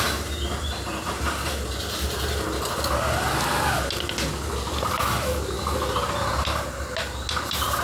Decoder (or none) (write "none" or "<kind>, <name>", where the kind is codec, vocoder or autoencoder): none